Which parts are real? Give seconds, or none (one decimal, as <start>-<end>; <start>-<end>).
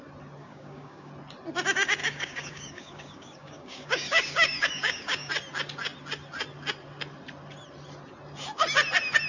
0.0-0.4; 1.1-2.0; 5.3-9.3